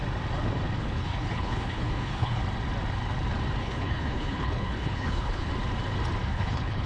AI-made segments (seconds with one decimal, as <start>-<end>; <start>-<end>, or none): 0.8-2.4; 3.6-5.5; 6.2-6.9